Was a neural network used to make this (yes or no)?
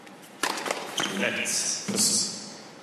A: no